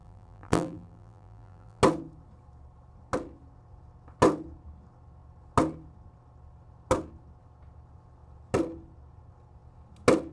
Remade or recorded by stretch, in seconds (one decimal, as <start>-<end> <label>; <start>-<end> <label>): 0.0-1.8 remade; 1.8-10.3 recorded